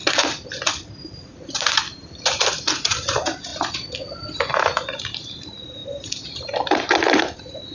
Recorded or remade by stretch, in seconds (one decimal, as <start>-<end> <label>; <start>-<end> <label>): 0.0-0.7 recorded; 0.7-3.5 remade; 3.5-4.6 recorded; 4.6-7.7 remade